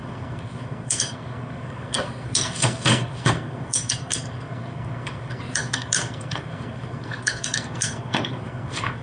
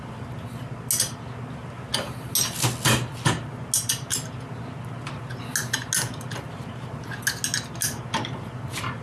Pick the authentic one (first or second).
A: second